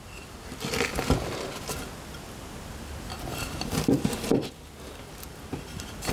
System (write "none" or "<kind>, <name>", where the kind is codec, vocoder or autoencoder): none